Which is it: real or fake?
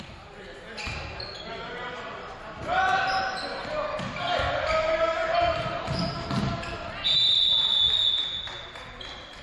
real